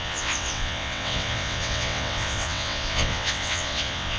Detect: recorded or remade remade